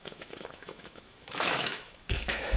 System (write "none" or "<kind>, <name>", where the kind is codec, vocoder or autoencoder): autoencoder, DAC-VAE